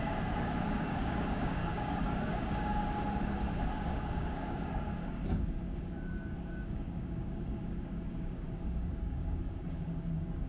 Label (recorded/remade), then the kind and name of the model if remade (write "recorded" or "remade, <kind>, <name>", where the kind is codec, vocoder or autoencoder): remade, codec, DAC